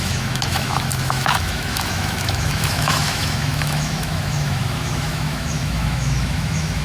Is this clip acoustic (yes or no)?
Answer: no